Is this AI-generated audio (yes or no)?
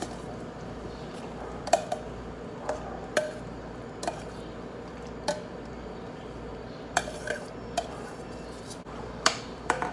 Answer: yes